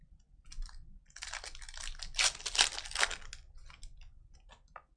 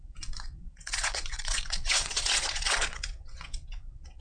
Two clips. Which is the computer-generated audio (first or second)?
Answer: second